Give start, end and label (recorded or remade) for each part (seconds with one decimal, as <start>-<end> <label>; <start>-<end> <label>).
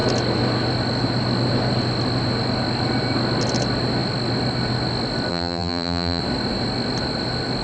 0.0-5.3 recorded; 5.3-6.2 remade; 6.2-7.6 recorded